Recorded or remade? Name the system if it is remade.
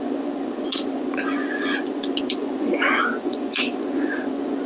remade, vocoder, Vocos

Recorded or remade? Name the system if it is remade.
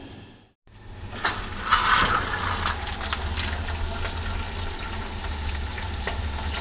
recorded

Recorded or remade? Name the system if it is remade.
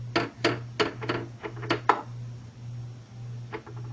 recorded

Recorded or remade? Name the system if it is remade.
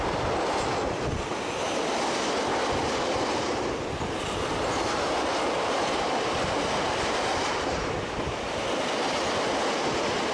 recorded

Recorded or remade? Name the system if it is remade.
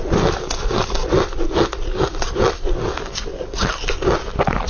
recorded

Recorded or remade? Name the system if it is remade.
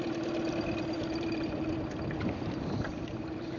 recorded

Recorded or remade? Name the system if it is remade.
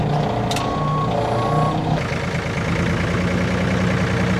recorded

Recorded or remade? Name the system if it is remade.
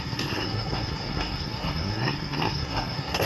remade, codec, SNAC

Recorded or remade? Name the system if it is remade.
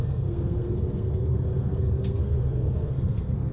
remade, codec, SNAC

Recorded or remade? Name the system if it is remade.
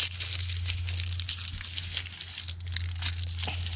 recorded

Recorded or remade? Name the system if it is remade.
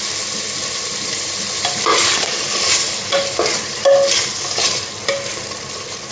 recorded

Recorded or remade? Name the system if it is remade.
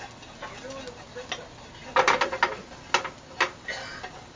recorded